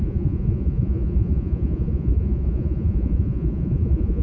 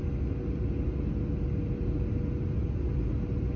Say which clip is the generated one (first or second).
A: first